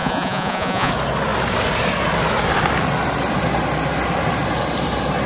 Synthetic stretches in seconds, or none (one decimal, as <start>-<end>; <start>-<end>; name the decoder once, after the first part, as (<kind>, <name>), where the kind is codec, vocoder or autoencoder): 0.0-0.9 (vocoder, Vocos)